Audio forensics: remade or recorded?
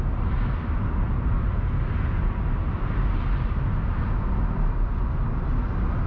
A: recorded